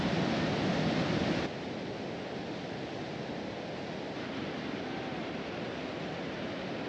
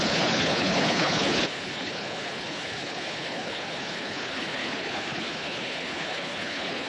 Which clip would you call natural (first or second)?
first